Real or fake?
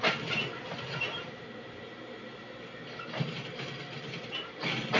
real